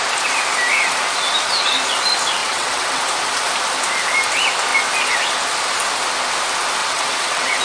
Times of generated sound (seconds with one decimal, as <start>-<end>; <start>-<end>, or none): 2.4-3.0; 6.8-7.6